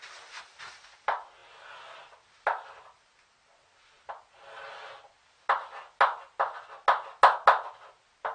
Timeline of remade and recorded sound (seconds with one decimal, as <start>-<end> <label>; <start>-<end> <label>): 0.0-8.3 recorded